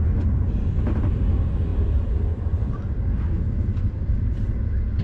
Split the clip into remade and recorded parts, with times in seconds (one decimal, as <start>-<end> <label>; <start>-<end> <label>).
0.0-1.7 recorded; 1.7-5.0 remade